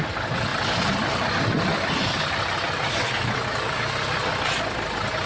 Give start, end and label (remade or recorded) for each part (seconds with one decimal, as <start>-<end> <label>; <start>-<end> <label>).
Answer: 0.0-5.3 recorded